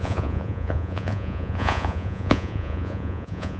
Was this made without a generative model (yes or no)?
no